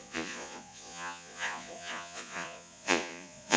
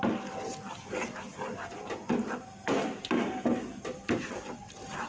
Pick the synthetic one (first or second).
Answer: first